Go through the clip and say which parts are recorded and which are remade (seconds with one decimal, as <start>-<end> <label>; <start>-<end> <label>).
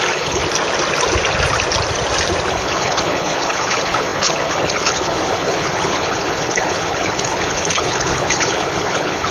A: 0.0-0.4 remade; 0.4-2.5 recorded; 2.5-9.3 remade